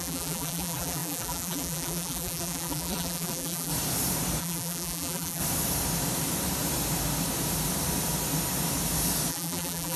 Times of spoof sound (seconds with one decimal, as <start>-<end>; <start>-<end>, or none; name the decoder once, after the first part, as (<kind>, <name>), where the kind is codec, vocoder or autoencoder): 0.0-3.7 (vocoder, BigVGAN v2); 4.4-5.4; 9.3-10.0

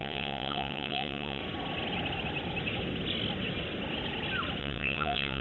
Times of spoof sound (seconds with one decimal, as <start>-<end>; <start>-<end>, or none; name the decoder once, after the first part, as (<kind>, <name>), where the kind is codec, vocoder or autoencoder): 0.0-1.4 (vocoder, WaveNeXt); 4.6-5.4

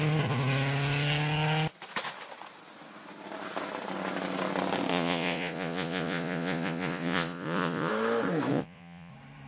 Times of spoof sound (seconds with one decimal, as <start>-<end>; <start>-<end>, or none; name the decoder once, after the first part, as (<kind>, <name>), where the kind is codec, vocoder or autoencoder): 4.9-7.9 (vocoder, Vocos); 8.5-9.1

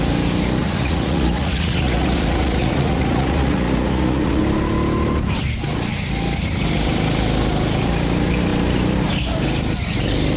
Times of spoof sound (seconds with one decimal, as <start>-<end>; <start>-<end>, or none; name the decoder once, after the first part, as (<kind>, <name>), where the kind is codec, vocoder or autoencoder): 0.6-4.4 (vocoder, Vocos)

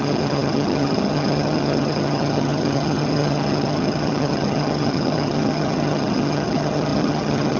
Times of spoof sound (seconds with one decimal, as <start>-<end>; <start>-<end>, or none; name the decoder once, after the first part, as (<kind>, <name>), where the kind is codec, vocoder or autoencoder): 0.0-7.6 (vocoder, HiFi-GAN)

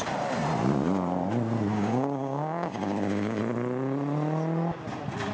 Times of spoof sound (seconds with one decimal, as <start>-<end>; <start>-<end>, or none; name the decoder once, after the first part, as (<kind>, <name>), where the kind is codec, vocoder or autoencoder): 1.7-3.4 (codec, DAC)

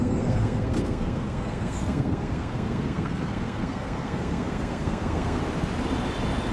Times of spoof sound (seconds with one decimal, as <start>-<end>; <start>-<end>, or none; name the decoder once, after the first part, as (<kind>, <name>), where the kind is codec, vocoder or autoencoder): 0.0-5.4 (codec, SNAC)